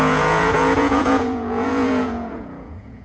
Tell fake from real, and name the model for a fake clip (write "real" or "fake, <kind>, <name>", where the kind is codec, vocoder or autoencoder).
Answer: fake, vocoder, Vocos